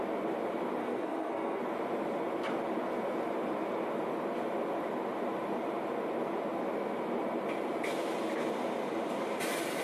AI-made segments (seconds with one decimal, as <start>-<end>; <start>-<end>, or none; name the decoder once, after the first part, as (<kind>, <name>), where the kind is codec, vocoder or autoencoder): 0.8-1.6 (codec, SNAC)